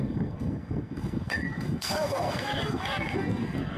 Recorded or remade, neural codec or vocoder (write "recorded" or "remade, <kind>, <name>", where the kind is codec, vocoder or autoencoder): remade, codec, SNAC